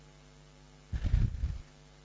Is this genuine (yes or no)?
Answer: yes